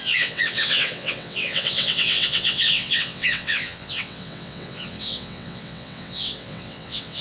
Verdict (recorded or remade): remade